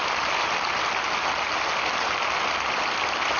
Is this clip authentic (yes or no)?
yes